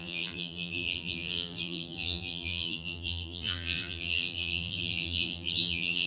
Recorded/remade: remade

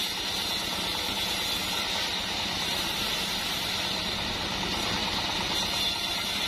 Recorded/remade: recorded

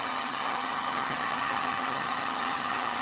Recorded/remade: remade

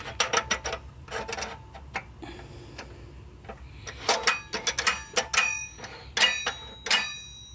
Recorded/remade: recorded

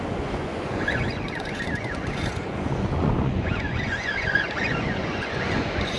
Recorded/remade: remade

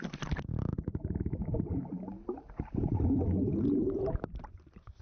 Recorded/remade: remade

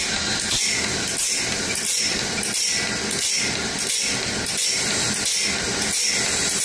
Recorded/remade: recorded